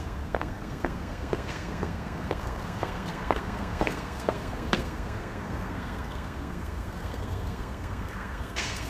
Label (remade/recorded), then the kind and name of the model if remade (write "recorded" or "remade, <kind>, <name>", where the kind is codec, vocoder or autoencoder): remade, codec, SNAC